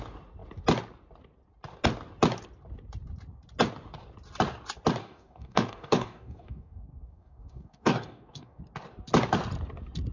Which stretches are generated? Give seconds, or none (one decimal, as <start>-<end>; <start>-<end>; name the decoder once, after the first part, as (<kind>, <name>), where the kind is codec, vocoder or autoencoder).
5.0-8.6 (codec, DAC)